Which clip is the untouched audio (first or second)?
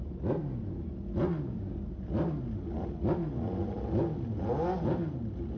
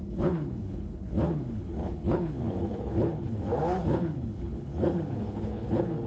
first